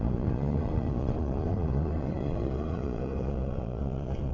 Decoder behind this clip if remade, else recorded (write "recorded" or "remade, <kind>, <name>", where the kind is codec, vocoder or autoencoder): remade, vocoder, Vocos